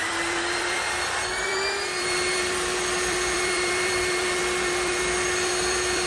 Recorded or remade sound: remade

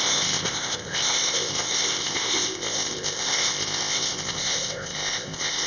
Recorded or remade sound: remade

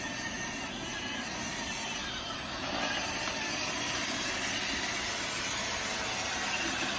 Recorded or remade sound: recorded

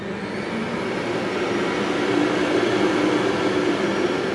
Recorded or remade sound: recorded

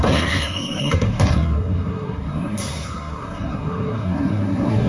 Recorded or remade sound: remade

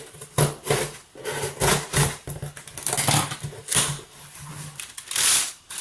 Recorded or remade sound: recorded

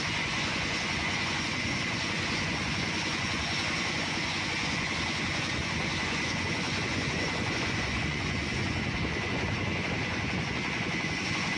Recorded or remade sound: remade